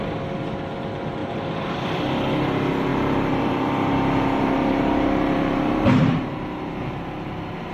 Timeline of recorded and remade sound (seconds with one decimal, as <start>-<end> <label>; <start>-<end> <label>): 0.0-1.2 recorded; 1.2-2.0 remade; 2.0-2.9 recorded; 2.9-6.7 remade; 6.7-7.7 recorded